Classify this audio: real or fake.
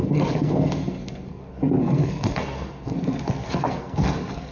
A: fake